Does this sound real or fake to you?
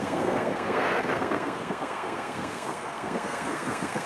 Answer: fake